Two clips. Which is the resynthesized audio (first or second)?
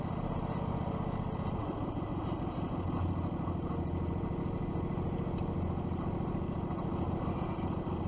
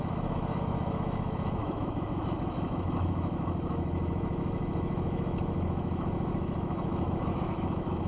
second